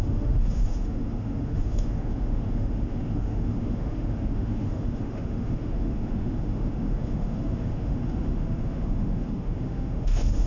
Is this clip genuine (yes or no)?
no